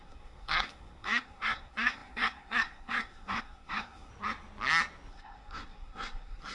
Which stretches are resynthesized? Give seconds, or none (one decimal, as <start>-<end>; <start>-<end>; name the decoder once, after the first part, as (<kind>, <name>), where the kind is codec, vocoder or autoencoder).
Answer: 0.0-4.1 (codec, SNAC); 5.1-6.5